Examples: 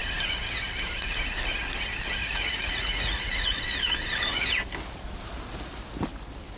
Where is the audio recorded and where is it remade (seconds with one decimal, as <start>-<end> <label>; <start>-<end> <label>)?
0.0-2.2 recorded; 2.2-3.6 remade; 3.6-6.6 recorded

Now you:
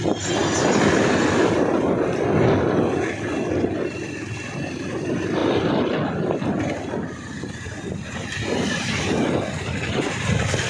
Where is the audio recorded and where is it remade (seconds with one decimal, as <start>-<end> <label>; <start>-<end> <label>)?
0.0-10.7 recorded

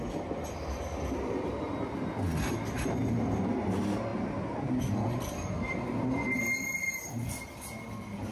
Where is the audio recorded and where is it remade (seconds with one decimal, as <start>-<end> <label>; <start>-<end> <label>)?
0.0-8.3 recorded

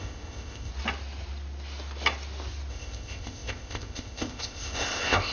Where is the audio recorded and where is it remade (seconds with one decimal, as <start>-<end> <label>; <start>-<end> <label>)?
0.0-0.7 remade; 0.7-2.7 recorded; 2.7-5.3 remade

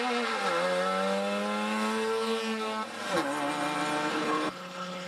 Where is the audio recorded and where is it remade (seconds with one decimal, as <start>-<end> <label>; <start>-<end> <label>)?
0.0-4.1 recorded; 4.1-5.1 remade

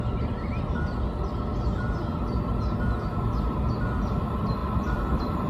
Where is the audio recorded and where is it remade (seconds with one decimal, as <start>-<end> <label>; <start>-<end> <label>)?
0.0-4.6 recorded; 4.6-5.5 remade